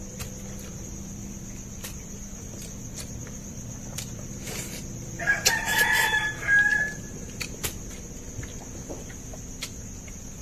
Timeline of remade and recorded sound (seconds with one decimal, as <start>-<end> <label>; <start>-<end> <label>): 0.0-0.7 recorded; 0.7-5.8 remade; 5.8-10.4 recorded

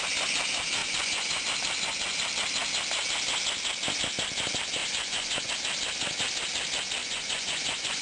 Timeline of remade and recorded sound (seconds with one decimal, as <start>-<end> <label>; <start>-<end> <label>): 0.0-0.8 recorded; 0.8-1.4 remade; 1.4-4.8 recorded; 4.8-5.5 remade; 5.5-7.0 recorded; 7.0-8.0 remade

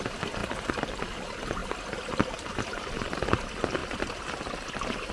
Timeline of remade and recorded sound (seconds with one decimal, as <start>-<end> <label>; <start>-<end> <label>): 0.0-5.1 recorded

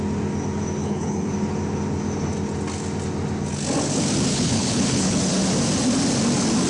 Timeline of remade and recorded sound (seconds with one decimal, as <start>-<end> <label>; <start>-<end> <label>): 0.0-0.8 recorded; 0.8-1.3 remade; 1.3-4.3 recorded; 4.3-5.2 remade; 5.2-6.7 recorded

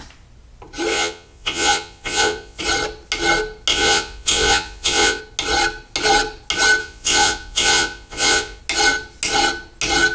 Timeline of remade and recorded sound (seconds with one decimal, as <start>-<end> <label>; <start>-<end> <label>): 0.0-0.9 recorded; 0.9-2.6 remade; 2.6-3.7 recorded; 3.7-5.2 remade; 5.2-6.8 recorded; 6.8-8.6 remade; 8.6-10.1 recorded